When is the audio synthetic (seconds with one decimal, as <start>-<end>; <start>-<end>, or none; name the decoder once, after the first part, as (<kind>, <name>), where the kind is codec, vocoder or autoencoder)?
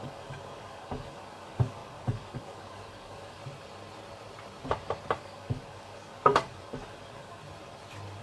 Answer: 0.0-3.4 (codec, DAC); 5.2-7.4